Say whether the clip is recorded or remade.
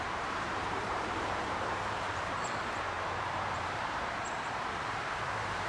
remade